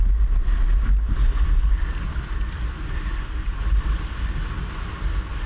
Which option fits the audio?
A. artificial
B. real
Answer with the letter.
B